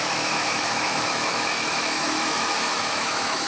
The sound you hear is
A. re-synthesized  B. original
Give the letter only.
A